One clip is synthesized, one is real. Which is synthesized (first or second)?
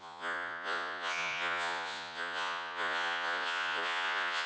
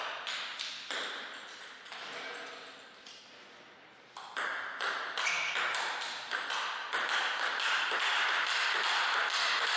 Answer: first